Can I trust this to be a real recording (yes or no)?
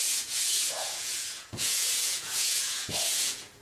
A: no